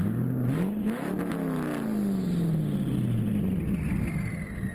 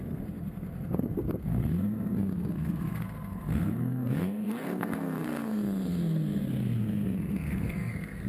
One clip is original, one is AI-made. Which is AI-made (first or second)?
second